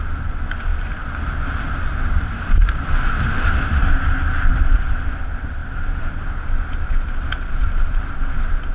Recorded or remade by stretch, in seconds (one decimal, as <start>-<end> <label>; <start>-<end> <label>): 0.0-8.7 recorded